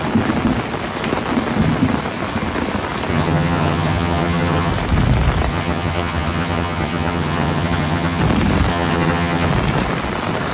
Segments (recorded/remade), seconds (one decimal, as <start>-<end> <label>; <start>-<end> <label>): 0.0-3.1 recorded; 3.1-4.7 remade; 4.7-5.5 recorded; 5.5-8.2 remade; 8.2-8.7 recorded; 8.7-9.5 remade; 9.5-10.5 recorded

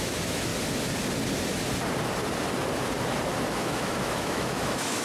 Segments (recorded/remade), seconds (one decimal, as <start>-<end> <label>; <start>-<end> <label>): 0.0-0.5 remade; 0.5-3.5 recorded; 3.5-5.0 remade

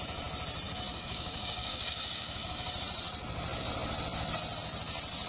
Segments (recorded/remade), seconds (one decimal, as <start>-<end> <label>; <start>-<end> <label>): 0.0-0.9 recorded; 0.9-2.7 remade; 2.7-5.3 recorded

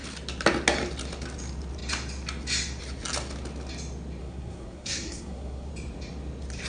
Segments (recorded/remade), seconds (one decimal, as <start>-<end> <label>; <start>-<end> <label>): 0.0-4.2 recorded; 4.2-5.7 remade; 5.7-6.7 recorded